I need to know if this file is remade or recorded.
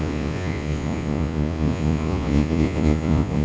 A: remade